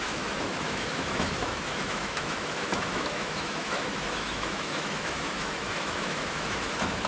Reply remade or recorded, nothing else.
remade